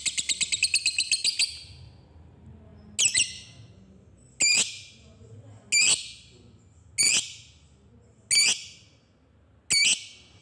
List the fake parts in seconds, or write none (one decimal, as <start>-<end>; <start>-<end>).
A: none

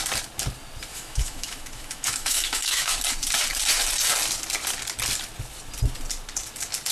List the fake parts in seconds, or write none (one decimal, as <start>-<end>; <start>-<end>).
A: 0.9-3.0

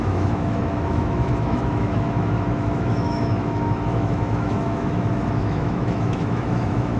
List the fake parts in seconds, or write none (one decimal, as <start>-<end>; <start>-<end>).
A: 0.0-7.0

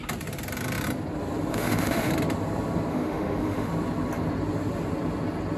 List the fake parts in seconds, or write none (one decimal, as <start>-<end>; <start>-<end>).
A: 1.5-2.1; 2.9-3.7

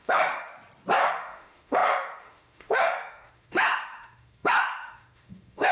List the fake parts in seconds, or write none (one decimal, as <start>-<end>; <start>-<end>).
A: 0.0-0.5; 1.1-5.7

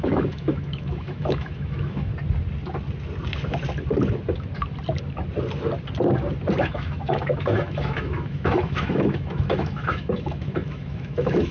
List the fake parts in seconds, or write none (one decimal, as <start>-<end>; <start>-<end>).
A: 0.0-2.1; 6.6-11.5